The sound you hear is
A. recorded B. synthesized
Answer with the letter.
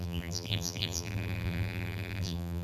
B